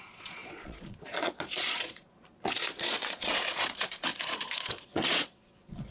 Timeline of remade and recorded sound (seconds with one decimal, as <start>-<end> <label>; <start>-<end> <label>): 0.0-5.9 remade